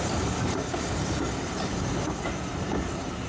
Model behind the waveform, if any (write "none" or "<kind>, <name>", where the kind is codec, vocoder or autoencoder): none